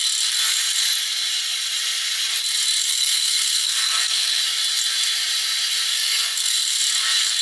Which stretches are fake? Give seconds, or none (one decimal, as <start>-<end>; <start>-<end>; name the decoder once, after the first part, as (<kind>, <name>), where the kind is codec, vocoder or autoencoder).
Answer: 2.8-4.4 (codec, SNAC); 5.9-6.8

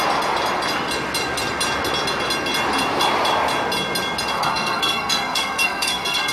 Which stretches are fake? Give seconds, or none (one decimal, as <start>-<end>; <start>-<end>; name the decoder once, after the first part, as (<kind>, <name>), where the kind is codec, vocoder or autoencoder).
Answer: 4.3-6.3 (codec, SNAC)

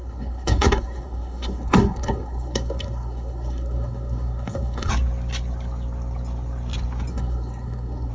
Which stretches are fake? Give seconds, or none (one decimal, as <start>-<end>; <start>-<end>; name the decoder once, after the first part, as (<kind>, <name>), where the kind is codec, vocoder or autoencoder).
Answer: 0.0-4.9 (codec, SNAC); 7.1-8.1

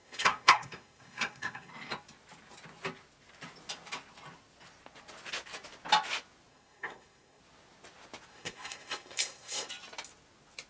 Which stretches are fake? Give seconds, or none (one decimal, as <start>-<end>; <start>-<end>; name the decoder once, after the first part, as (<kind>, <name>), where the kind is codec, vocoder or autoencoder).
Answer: 0.0-1.7 (codec, SNAC); 6.5-7.4; 8.3-9.7